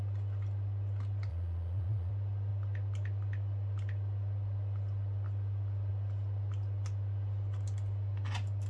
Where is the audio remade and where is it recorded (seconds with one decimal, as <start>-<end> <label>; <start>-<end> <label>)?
0.0-1.3 recorded; 1.3-2.1 remade; 2.1-8.7 recorded